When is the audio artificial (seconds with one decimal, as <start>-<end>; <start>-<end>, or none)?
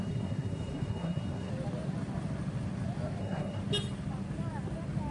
0.0-1.5; 3.2-3.6